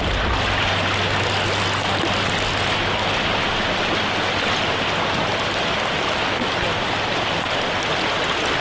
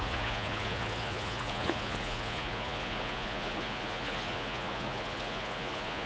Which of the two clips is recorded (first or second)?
first